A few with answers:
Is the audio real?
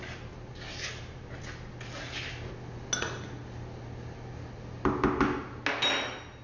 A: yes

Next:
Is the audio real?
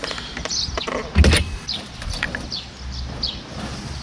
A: yes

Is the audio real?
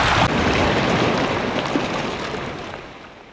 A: yes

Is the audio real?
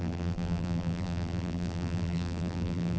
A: no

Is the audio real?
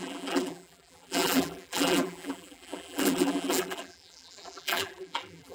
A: no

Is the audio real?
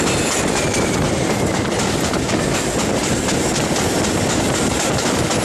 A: yes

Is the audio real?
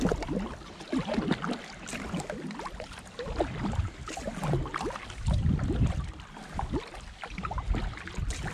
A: yes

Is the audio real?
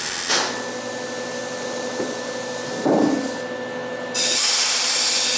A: yes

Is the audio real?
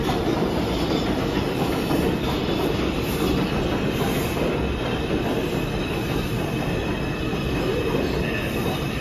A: yes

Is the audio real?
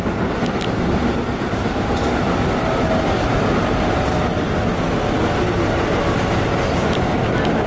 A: yes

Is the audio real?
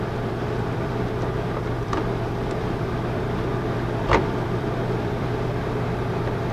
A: no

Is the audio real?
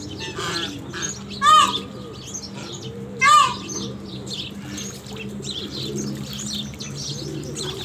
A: yes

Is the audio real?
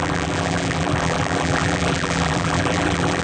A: no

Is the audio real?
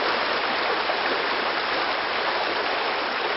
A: yes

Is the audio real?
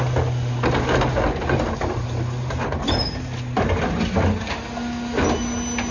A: yes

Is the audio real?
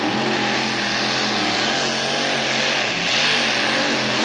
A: yes